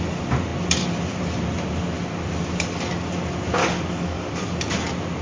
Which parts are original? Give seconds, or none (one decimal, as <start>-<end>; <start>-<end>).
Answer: 0.0-3.6; 4.5-5.2